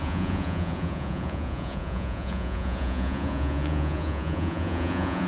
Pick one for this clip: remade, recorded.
remade